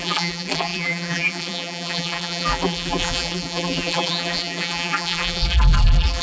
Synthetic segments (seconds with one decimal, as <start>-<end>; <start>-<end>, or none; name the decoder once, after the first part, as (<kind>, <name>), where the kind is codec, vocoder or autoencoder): 0.0-6.2 (vocoder, BigVGAN v2)